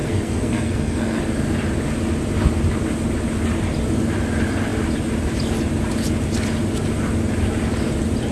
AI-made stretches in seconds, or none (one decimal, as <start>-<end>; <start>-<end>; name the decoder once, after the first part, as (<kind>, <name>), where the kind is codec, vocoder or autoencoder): 0.0-1.2 (codec, SNAC)